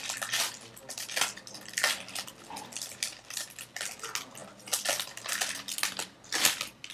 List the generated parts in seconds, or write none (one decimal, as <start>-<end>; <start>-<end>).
none